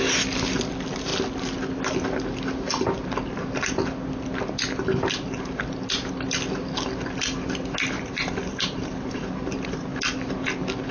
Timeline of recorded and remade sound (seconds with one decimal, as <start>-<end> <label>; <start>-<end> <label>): 0.0-10.9 recorded